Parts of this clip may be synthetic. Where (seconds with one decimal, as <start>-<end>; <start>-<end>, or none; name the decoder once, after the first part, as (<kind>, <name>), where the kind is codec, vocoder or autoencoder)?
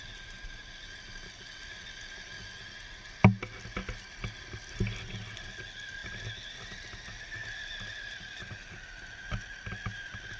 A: none